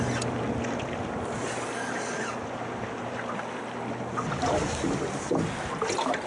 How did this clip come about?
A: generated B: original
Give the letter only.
B